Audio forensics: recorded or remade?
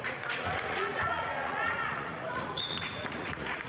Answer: remade